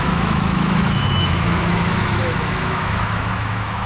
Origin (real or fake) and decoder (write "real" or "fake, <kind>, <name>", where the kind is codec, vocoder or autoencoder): fake, autoencoder, DAC-VAE